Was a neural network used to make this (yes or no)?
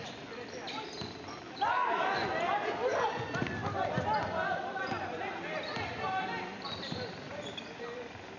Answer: no